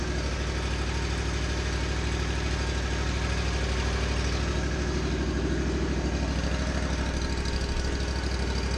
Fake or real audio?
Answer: real